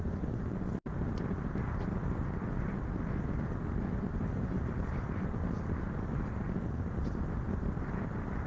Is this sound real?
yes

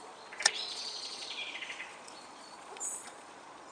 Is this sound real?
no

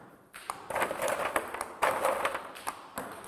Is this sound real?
yes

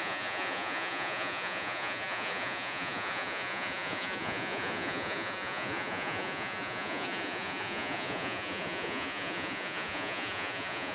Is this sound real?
no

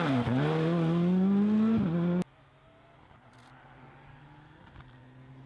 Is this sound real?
yes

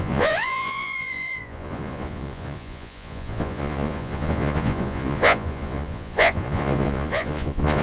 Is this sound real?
no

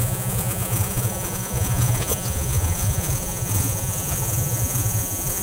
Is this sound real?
no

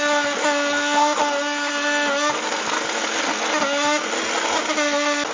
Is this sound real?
yes